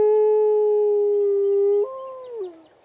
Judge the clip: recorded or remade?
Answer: recorded